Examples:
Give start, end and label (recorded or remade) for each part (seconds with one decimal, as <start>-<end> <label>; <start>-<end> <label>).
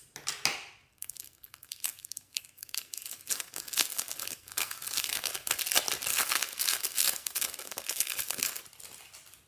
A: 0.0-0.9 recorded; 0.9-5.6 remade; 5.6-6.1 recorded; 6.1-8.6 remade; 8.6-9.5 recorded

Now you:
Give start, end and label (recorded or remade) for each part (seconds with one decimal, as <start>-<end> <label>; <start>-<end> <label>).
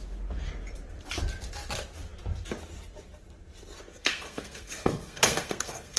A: 0.0-3.9 recorded; 3.9-6.0 remade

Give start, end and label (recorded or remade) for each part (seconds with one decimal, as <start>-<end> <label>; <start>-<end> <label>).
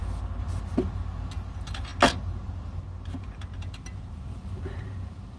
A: 0.0-5.4 recorded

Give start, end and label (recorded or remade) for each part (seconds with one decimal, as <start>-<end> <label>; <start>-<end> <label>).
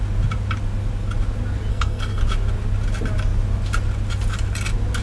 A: 0.0-1.7 recorded; 1.7-2.2 remade; 2.2-5.0 recorded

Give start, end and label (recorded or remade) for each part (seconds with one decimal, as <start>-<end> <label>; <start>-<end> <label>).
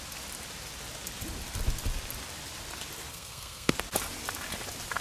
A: 0.0-3.1 recorded; 3.1-3.7 remade; 3.7-5.0 recorded